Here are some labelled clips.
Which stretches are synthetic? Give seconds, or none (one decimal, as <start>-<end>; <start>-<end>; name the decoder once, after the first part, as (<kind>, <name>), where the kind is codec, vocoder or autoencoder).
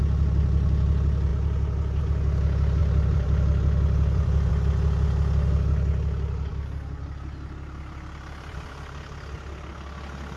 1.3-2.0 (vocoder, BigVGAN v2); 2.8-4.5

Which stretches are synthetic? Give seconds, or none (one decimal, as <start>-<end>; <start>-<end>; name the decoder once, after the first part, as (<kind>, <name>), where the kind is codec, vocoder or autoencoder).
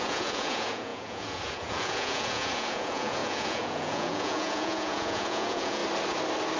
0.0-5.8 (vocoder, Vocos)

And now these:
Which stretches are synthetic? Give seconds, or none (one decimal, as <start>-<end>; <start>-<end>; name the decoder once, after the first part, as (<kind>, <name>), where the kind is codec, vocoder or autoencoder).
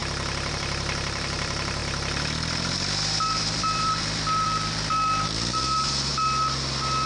0.5-1.8 (vocoder, BigVGAN v2); 3.3-6.1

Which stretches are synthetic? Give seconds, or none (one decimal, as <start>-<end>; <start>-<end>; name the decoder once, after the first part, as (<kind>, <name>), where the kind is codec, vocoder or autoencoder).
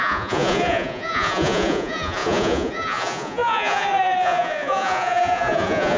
0.0-6.0 (vocoder, Vocos)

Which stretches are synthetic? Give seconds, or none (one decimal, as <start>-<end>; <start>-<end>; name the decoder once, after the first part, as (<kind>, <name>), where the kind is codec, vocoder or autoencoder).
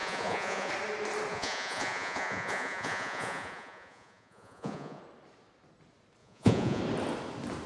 0.0-0.7 (vocoder, Vocos); 1.3-5.0; 6.2-6.8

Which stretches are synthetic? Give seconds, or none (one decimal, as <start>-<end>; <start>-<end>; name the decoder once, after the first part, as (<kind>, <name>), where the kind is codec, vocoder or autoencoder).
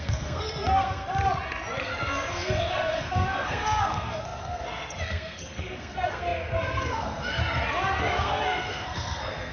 0.0-1.1 (codec, SNAC); 1.8-7.4; 8.0-9.5